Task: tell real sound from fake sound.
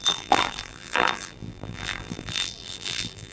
fake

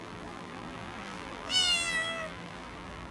fake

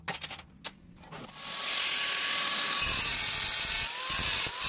real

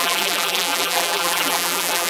fake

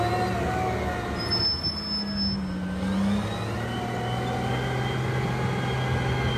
real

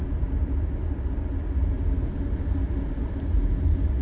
real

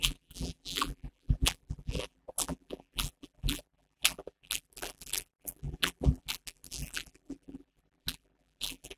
fake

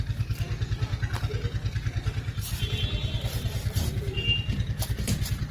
real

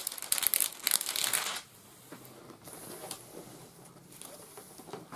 real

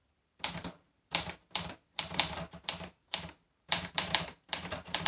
fake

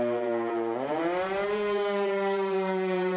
fake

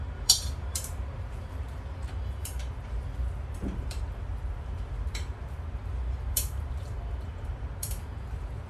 fake